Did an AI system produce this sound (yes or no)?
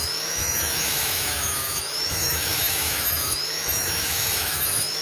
yes